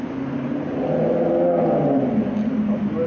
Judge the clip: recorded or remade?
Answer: recorded